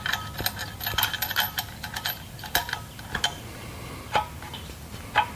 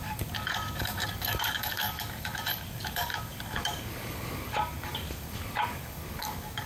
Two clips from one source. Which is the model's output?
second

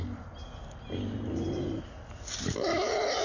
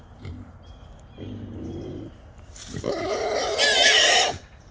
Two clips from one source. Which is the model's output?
second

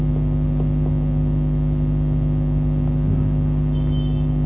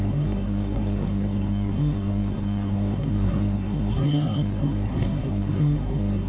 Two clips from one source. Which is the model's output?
second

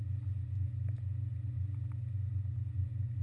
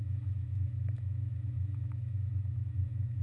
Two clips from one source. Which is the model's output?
second